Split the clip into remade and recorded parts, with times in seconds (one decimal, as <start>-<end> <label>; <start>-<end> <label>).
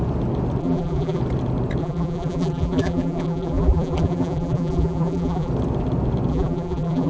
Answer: 0.0-0.6 recorded; 0.6-1.2 remade; 1.2-1.8 recorded; 1.8-5.5 remade; 5.5-6.3 recorded; 6.3-7.1 remade